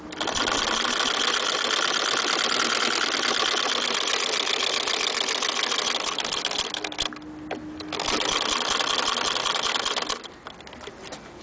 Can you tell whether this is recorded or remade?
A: recorded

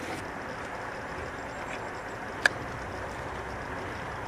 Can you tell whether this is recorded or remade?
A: recorded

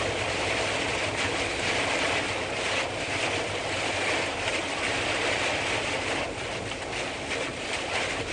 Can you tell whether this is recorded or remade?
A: recorded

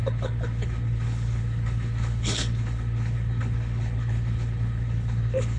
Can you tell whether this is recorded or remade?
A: remade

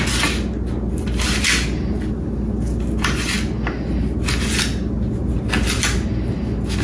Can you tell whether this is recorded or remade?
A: recorded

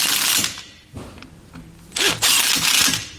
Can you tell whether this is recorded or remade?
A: recorded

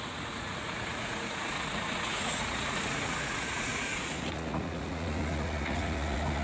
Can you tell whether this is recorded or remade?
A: remade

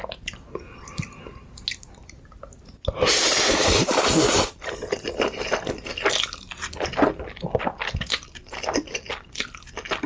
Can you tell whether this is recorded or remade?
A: recorded